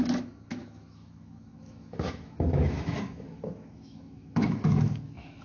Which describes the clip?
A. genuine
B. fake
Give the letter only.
B